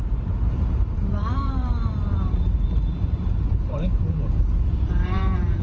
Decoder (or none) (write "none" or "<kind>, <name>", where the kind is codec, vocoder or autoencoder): vocoder, BigVGAN v2